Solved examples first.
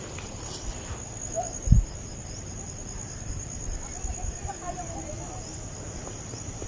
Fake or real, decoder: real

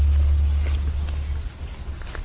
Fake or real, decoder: real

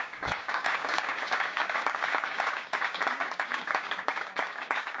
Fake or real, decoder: fake, codec, DAC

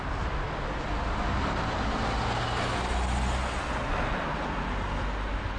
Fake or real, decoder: real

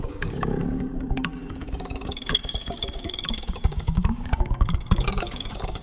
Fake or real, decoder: fake, codec, DAC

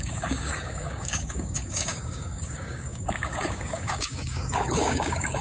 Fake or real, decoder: fake, codec, DAC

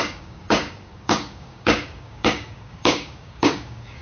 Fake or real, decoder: fake, codec, DAC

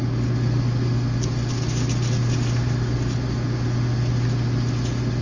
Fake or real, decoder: real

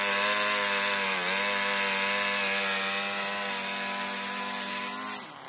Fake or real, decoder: real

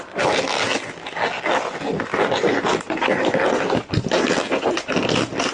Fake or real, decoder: real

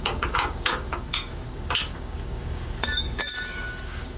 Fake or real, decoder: fake, codec, DAC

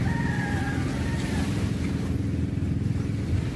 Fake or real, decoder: real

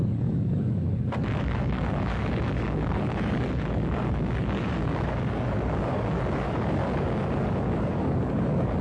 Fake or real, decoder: fake, codec, DAC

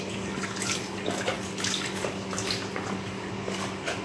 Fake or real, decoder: fake, codec, DAC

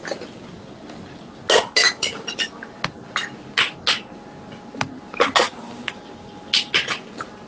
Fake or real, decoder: real